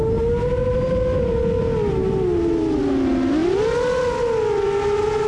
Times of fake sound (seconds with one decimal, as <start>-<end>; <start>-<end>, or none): 3.4-4.0